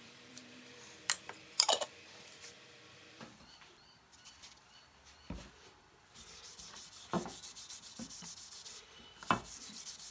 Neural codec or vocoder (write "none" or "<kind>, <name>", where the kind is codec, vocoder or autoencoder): vocoder, BigVGAN v2